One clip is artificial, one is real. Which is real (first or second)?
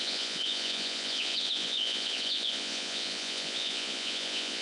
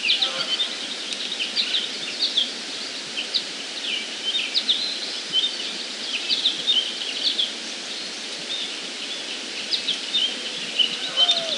second